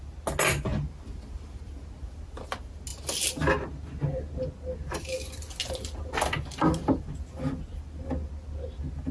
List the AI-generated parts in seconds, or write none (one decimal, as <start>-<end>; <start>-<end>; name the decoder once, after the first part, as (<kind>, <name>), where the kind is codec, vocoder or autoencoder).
none